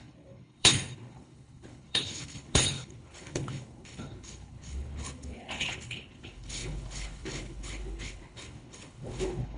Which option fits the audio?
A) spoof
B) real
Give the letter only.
A